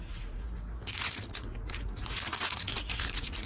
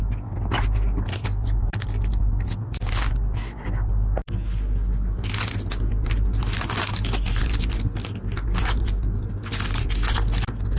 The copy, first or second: first